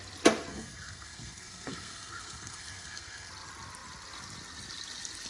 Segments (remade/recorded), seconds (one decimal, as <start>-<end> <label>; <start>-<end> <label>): 0.0-0.5 recorded; 0.5-3.3 remade; 3.3-5.3 recorded